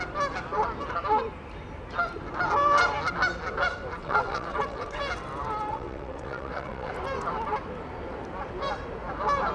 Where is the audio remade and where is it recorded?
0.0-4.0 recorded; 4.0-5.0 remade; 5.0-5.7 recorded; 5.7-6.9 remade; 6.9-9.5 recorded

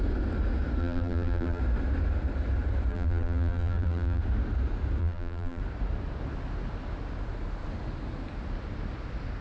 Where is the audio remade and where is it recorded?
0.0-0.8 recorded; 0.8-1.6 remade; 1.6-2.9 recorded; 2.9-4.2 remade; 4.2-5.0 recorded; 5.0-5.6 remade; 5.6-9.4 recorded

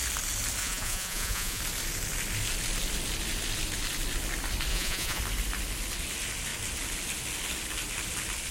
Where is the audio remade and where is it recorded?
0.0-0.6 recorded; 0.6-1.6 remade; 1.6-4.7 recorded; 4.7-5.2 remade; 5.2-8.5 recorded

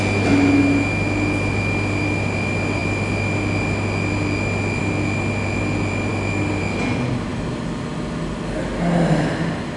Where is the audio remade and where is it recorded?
0.0-9.8 recorded

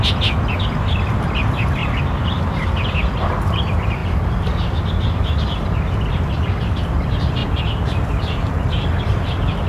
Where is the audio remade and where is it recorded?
0.0-9.7 recorded

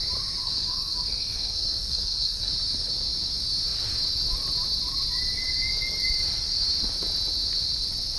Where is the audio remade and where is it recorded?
0.0-0.4 recorded; 0.4-2.5 remade; 2.5-8.2 recorded

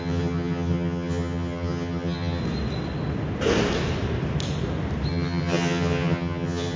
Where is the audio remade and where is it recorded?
0.0-2.4 remade; 2.4-5.1 recorded; 5.1-6.8 remade